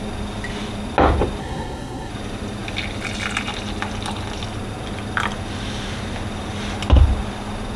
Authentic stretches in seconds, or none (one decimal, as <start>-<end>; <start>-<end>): 0.0-1.4; 2.1-7.8

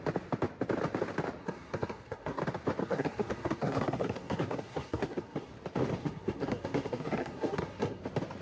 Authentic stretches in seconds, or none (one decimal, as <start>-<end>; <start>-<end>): 0.0-1.4; 2.4-2.8; 5.5-6.0; 8.0-8.4

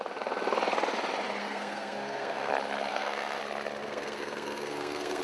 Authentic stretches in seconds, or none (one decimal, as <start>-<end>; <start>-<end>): 0.0-1.4; 2.5-2.9; 3.4-3.8

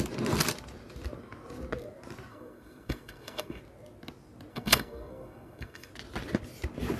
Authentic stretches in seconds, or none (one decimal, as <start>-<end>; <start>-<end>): 0.0-2.3; 3.6-4.5; 5.9-7.0

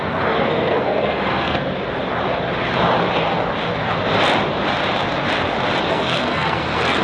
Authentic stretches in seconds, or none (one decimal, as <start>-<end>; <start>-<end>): 1.7-5.9

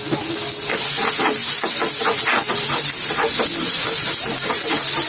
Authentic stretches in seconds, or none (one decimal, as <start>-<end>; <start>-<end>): 0.0-5.1

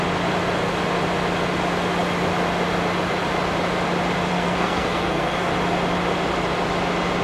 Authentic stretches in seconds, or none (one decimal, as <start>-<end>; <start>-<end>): 0.0-4.3; 5.5-7.2

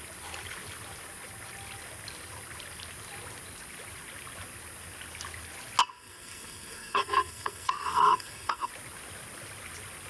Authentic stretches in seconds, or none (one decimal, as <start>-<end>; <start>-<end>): 0.0-5.8; 8.7-10.1